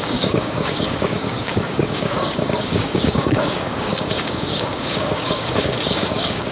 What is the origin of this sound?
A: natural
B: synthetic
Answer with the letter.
B